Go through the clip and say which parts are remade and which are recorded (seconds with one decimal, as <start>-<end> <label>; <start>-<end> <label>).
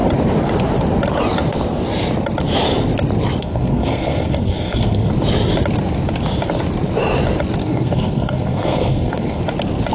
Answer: 0.0-3.4 recorded; 3.4-5.1 remade; 5.1-7.6 recorded; 7.6-9.4 remade; 9.4-9.9 recorded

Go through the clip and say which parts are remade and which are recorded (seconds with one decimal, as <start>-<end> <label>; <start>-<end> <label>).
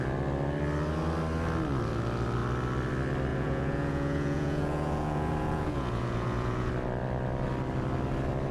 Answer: 0.0-3.3 recorded; 3.3-6.7 remade; 6.7-8.5 recorded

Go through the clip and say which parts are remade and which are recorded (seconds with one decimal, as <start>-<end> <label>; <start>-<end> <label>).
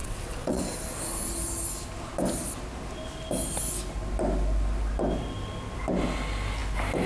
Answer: 0.0-0.6 remade; 0.6-7.1 recorded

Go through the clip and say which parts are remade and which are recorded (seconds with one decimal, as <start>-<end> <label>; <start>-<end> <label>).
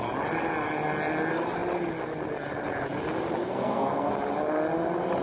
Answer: 0.0-3.4 recorded; 3.4-4.1 remade; 4.1-5.2 recorded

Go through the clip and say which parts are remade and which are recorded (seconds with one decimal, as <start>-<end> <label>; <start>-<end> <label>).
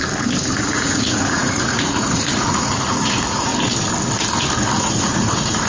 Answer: 0.0-0.6 recorded; 0.6-3.5 remade; 3.5-4.8 recorded; 4.8-5.7 remade